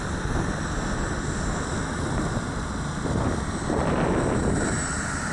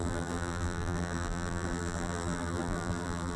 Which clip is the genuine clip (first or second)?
first